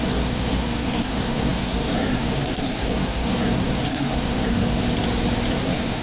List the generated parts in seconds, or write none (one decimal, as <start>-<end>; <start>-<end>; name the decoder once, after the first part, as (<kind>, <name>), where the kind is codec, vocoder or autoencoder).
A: 0.0-4.8 (codec, SNAC); 5.5-6.0